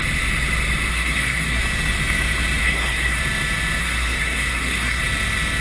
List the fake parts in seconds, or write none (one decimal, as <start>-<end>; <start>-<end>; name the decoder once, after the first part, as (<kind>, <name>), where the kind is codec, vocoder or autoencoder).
0.9-1.6 (codec, SNAC); 2.6-3.2; 3.8-5.0